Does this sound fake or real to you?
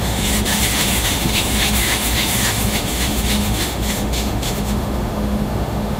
fake